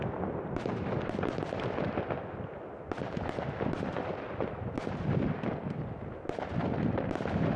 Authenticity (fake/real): real